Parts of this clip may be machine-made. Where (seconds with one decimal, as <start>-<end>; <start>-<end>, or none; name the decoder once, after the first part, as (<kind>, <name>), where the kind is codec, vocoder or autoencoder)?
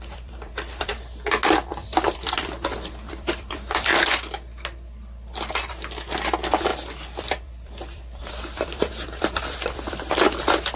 0.0-0.9 (vocoder, BigVGAN v2); 1.5-3.9; 5.7-6.7; 7.2-10.8